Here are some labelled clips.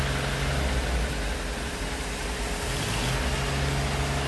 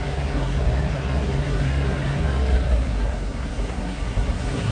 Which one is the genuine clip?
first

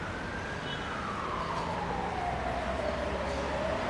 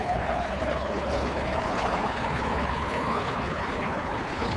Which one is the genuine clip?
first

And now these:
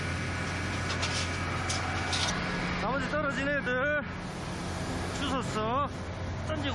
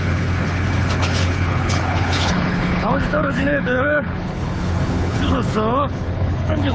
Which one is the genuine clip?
first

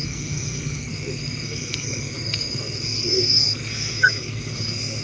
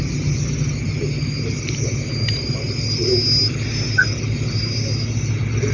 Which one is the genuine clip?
second